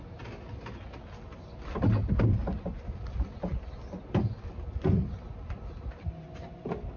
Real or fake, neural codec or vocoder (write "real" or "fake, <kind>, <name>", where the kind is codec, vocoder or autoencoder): real